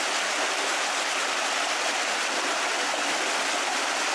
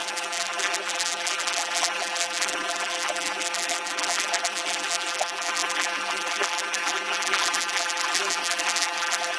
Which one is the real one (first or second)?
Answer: first